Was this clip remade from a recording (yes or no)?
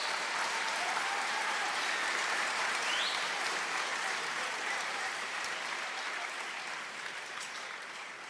yes